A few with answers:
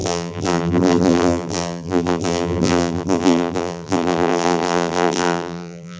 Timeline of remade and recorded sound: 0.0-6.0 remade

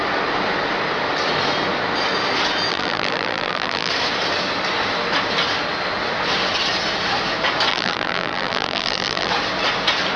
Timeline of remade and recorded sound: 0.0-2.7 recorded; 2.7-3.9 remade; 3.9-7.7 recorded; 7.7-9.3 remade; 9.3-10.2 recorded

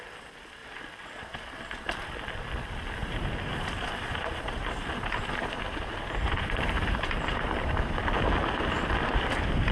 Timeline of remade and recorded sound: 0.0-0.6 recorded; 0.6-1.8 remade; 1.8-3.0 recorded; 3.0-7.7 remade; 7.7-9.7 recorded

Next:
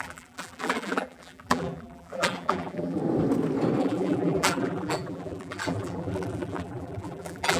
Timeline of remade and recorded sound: 0.0-3.0 remade; 3.0-3.8 recorded; 3.8-7.6 remade